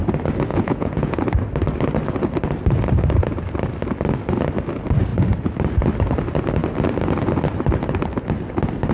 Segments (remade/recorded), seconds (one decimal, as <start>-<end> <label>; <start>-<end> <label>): 0.0-0.5 recorded; 0.5-1.2 remade; 1.2-8.9 recorded

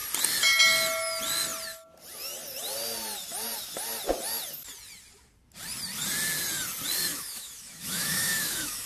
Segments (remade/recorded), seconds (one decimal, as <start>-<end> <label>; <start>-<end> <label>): 0.0-7.1 recorded; 7.1-8.9 remade

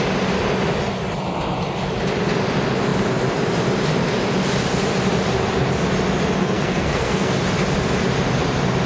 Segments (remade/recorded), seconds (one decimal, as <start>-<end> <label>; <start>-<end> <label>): 0.0-6.4 recorded; 6.4-7.3 remade; 7.3-8.9 recorded

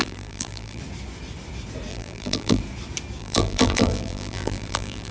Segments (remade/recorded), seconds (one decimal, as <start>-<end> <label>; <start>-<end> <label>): 0.0-0.8 remade; 0.8-1.9 recorded; 1.9-2.6 remade; 2.6-3.2 recorded; 3.2-5.1 remade

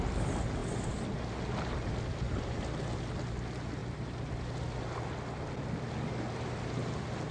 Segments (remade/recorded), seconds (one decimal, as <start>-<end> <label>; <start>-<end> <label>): 0.0-7.3 recorded

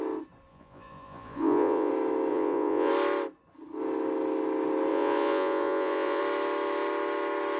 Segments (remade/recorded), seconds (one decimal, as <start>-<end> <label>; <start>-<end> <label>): 0.0-0.5 recorded; 0.5-1.9 remade; 1.9-2.3 recorded; 2.3-2.9 remade; 2.9-4.9 recorded; 4.9-6.2 remade; 6.2-7.6 recorded

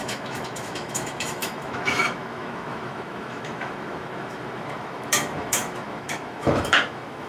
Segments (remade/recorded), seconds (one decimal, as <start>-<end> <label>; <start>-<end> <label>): 0.0-7.3 remade